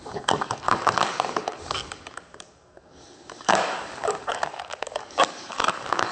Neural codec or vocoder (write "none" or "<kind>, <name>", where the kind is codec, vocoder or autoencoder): codec, DAC